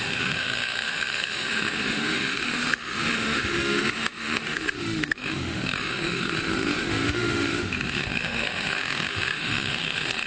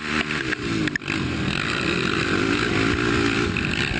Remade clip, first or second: first